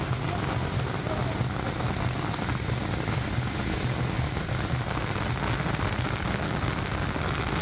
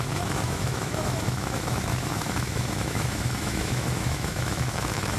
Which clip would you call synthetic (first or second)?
second